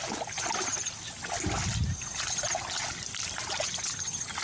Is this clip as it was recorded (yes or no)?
yes